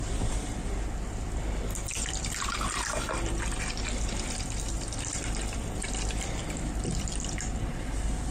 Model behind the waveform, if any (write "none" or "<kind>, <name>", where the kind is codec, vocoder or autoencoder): vocoder, BigVGAN v2